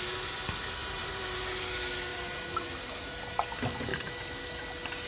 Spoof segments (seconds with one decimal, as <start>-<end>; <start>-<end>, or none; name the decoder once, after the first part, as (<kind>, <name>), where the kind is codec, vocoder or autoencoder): 0.8-1.4 (vocoder, BigVGAN v2); 2.1-3.1; 3.9-4.6